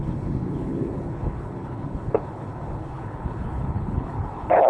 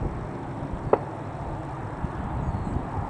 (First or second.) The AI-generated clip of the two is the first